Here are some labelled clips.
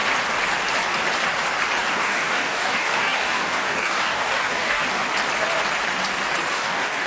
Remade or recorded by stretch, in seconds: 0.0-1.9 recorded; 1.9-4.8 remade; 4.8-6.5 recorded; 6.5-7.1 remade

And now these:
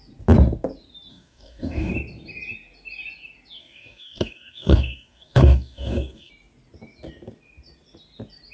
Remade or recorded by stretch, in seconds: 0.0-1.1 recorded; 1.1-1.9 remade; 1.9-3.6 recorded; 3.6-6.3 remade; 6.3-8.5 recorded

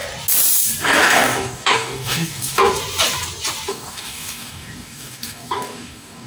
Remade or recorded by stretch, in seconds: 0.0-0.8 recorded; 0.8-2.7 remade; 2.7-3.7 recorded; 3.7-6.3 remade

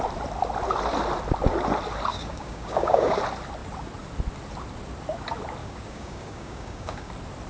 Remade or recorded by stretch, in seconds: 0.0-2.1 recorded; 2.1-3.2 remade; 3.2-5.6 recorded; 5.6-7.1 remade; 7.1-7.5 recorded

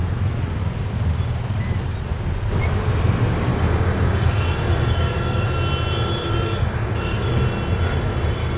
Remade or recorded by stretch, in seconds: 0.0-3.5 recorded; 3.5-5.5 remade; 5.5-6.5 recorded; 6.5-7.4 remade; 7.4-8.6 recorded

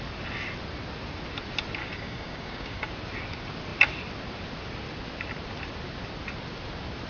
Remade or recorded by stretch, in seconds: 0.0-1.8 recorded; 1.8-2.9 remade; 2.9-7.1 recorded

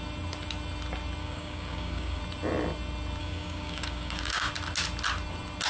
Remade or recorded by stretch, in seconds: 0.0-1.2 recorded; 1.2-2.2 remade; 2.2-3.2 recorded; 3.2-4.5 remade; 4.5-5.7 recorded